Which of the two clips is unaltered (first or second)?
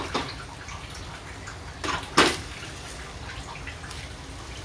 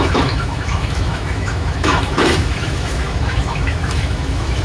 first